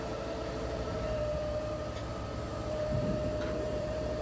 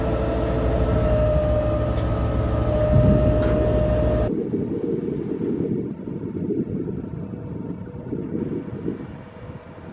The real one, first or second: second